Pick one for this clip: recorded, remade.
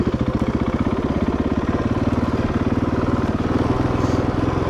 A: recorded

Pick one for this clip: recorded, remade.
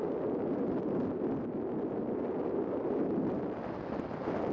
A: recorded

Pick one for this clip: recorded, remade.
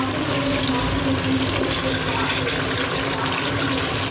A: recorded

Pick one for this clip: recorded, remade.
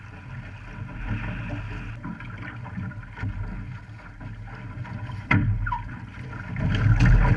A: recorded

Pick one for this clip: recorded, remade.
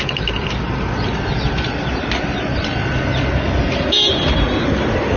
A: recorded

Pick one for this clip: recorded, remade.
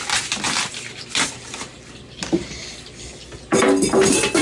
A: recorded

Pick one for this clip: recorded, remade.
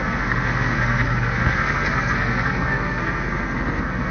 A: remade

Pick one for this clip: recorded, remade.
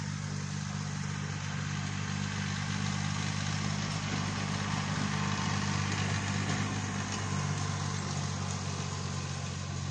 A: recorded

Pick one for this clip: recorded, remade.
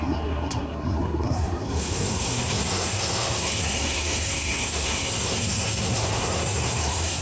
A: remade